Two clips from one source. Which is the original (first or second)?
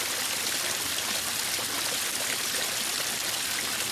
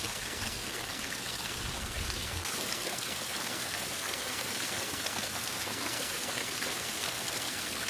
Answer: first